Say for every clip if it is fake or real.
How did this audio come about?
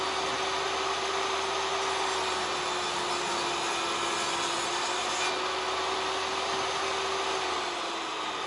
real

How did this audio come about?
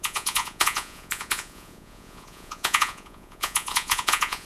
fake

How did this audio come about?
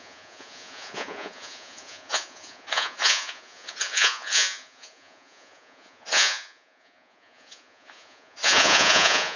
fake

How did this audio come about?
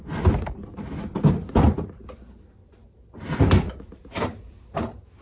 real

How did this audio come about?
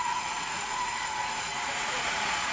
fake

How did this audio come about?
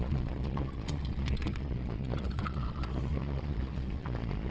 fake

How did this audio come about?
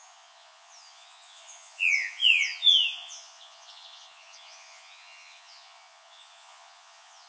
fake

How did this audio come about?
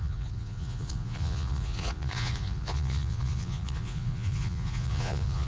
fake